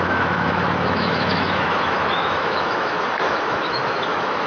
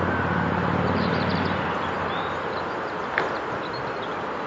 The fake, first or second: first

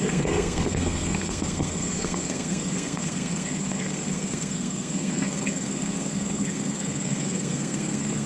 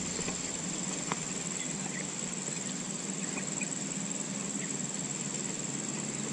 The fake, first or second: first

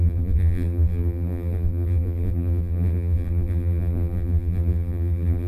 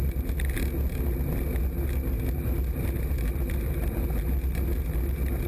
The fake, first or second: first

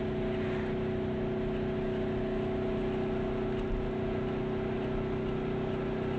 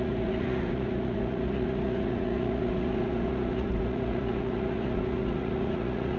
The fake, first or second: second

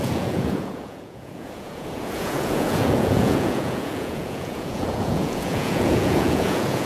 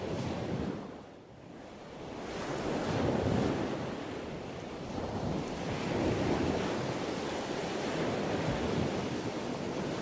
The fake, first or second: first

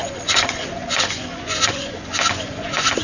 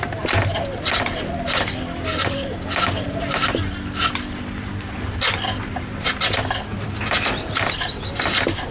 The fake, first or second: first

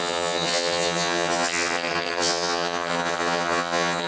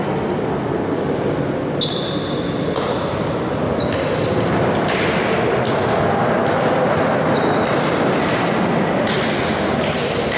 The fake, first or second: first